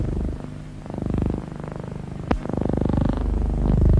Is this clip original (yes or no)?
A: no